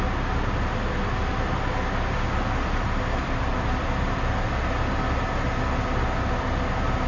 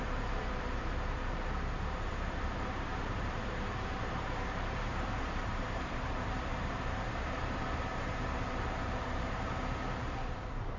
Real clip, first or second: first